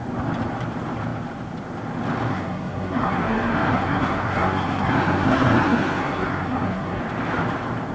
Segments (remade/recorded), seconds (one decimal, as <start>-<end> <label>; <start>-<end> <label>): 0.0-2.3 recorded; 2.3-7.0 remade; 7.0-7.9 recorded